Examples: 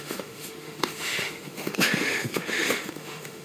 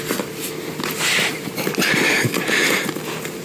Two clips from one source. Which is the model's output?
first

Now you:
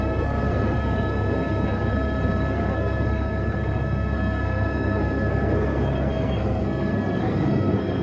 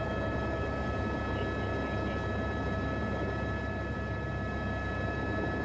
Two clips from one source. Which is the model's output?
first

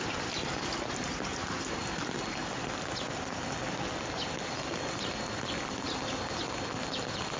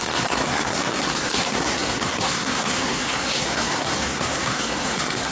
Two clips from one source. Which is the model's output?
second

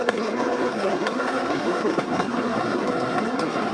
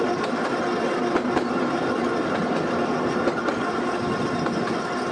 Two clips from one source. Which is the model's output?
first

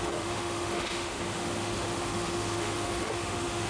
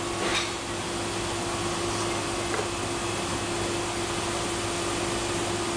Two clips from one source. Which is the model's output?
first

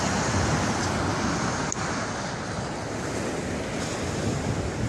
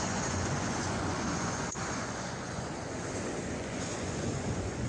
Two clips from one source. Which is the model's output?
second